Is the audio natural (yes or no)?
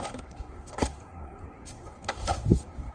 no